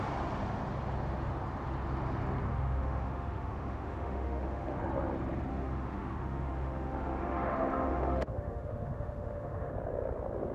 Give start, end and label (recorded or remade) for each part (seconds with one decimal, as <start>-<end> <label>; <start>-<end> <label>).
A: 0.0-2.5 recorded; 2.5-4.8 remade; 4.8-5.5 recorded; 5.5-9.7 remade; 9.7-10.5 recorded